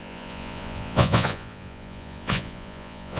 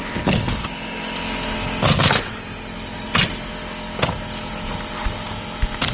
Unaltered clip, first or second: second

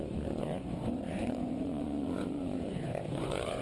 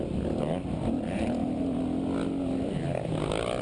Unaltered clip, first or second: second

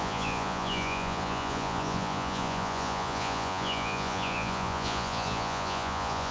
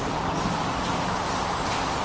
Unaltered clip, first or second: second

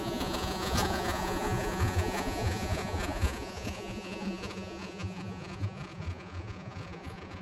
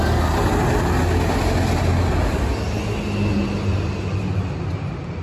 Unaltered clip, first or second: second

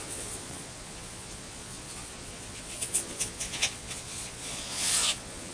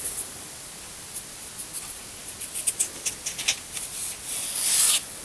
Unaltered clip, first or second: second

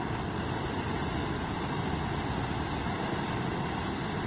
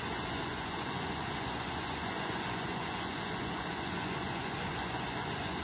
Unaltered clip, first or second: first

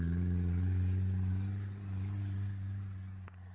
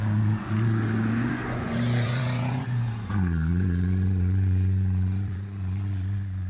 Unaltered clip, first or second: first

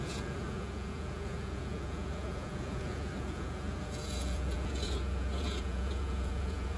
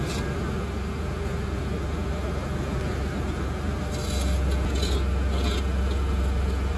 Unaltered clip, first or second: second